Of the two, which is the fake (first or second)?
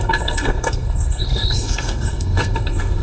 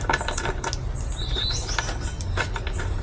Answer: first